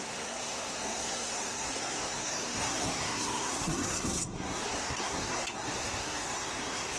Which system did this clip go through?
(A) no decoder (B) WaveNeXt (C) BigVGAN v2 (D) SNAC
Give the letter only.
D